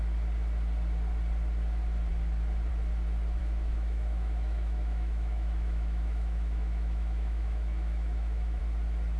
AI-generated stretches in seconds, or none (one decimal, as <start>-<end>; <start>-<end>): 3.4-8.6

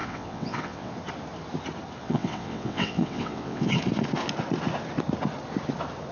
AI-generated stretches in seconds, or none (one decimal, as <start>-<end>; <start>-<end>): 0.0-0.9; 2.0-3.8

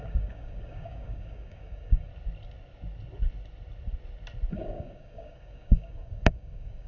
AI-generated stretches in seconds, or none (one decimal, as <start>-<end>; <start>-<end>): 0.0-2.1; 4.5-6.9

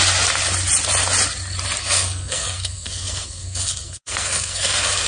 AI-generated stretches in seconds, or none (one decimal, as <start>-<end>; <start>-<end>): 1.8-5.1

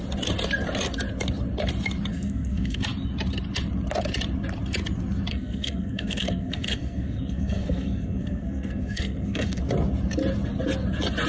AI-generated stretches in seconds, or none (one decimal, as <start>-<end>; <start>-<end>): 2.1-2.8; 5.3-9.6

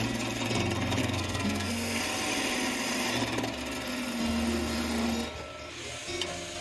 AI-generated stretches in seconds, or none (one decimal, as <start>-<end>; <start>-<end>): 1.0-2.0

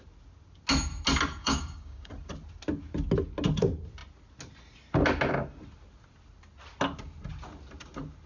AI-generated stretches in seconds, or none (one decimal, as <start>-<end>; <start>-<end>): 1.4-2.1